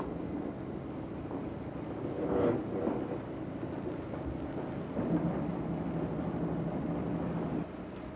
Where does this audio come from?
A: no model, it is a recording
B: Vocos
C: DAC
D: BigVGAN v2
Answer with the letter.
A